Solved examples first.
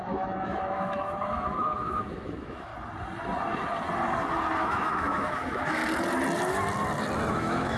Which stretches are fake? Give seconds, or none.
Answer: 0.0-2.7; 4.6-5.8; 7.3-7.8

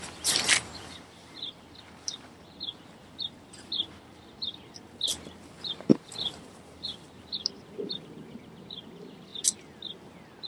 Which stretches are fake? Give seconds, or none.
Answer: 0.0-9.3

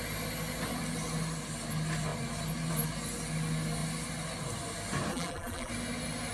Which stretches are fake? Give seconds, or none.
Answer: 5.1-5.7

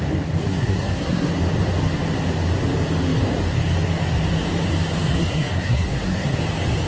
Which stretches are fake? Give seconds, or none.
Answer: 0.4-1.3; 5.2-6.4